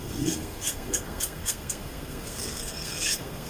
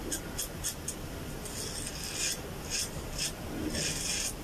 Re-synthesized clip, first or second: first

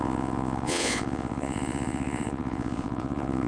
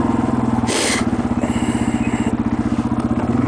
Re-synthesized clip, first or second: first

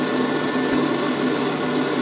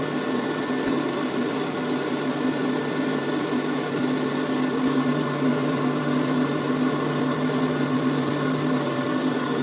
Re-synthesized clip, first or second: second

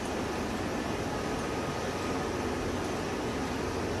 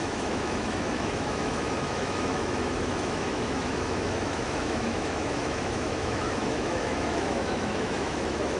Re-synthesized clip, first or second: second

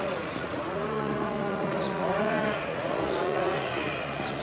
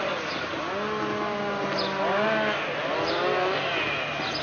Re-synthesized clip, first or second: first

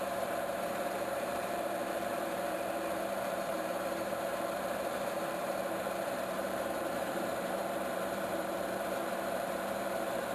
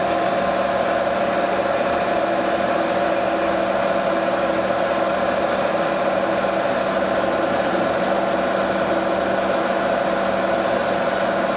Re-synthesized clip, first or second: first